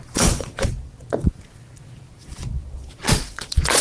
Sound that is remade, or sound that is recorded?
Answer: remade